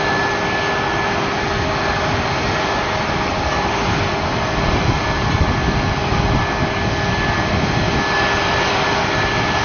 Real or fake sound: real